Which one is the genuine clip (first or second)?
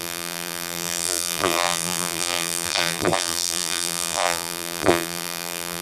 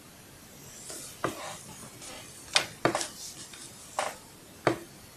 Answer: second